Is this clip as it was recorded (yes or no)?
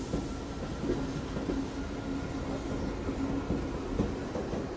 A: yes